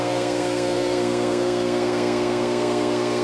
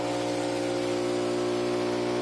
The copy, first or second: first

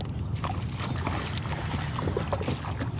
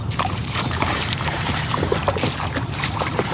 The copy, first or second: second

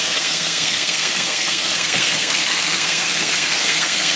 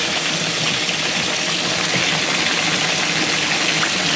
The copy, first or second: first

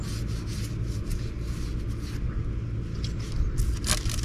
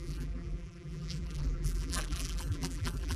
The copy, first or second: second